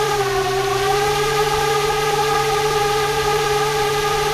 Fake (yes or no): yes